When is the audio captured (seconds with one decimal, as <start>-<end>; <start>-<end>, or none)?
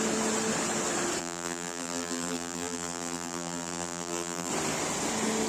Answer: 0.0-1.2; 4.5-5.5